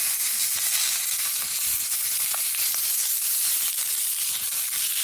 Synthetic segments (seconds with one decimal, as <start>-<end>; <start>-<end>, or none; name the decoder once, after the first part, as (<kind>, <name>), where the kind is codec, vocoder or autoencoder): none

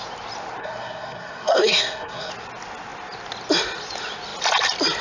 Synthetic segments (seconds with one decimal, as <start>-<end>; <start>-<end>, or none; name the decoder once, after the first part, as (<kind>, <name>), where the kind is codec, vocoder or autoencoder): 0.6-2.3 (codec, SNAC)

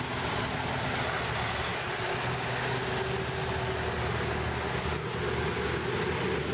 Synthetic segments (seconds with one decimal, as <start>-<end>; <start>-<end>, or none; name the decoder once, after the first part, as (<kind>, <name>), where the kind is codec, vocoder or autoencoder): none